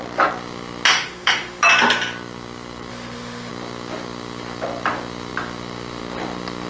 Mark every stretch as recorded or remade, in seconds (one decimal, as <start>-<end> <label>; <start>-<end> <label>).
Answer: 0.0-0.9 recorded; 0.9-1.6 remade; 1.6-2.9 recorded; 2.9-3.5 remade; 3.5-6.7 recorded